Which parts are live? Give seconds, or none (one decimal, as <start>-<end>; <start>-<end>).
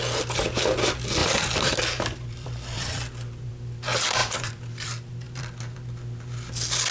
0.0-1.2; 3.5-4.2; 6.0-6.9